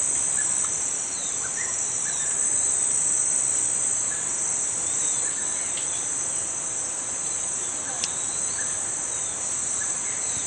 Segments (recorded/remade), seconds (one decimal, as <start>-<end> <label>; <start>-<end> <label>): 0.0-7.2 recorded; 7.2-7.7 remade; 7.7-9.6 recorded; 9.6-10.5 remade